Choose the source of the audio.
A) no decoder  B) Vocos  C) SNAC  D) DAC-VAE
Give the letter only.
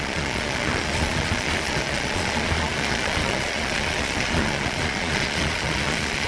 B